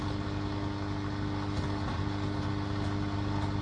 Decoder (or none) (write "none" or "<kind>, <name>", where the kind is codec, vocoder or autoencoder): none